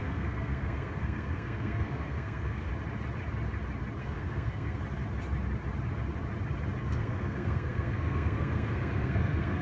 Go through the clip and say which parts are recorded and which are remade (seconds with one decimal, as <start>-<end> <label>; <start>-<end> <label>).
0.0-2.7 remade; 2.7-4.0 recorded; 4.0-4.8 remade; 4.8-6.8 recorded; 6.8-9.6 remade